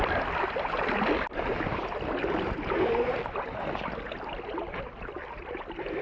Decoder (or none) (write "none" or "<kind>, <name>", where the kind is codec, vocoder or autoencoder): none